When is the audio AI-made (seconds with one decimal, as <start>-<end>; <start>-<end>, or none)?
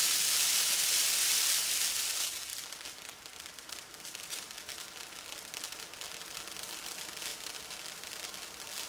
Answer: 2.5-4.5; 7.3-8.9